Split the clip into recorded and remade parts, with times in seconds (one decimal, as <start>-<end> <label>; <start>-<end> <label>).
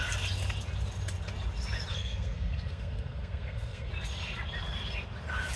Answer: 0.0-1.9 recorded; 1.9-3.9 remade; 3.9-5.6 recorded